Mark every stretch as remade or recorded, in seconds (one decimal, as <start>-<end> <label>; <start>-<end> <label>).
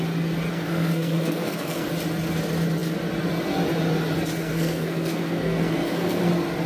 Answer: 0.0-0.5 recorded; 0.5-1.9 remade; 1.9-4.4 recorded; 4.4-6.3 remade; 6.3-6.7 recorded